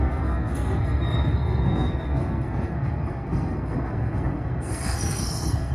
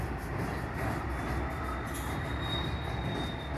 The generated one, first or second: first